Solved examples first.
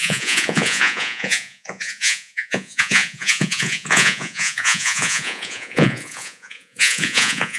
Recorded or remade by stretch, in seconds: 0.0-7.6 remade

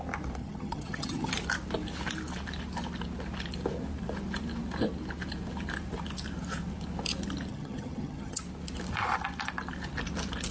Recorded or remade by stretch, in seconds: 0.0-0.4 recorded; 0.4-1.3 remade; 1.3-7.5 recorded; 7.5-8.4 remade; 8.4-10.5 recorded